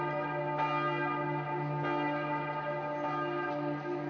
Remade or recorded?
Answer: recorded